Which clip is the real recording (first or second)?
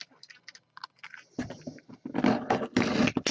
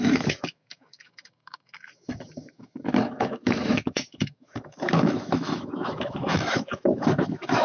first